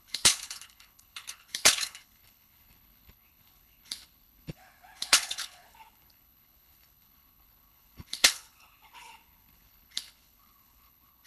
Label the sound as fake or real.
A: fake